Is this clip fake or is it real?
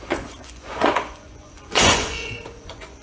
fake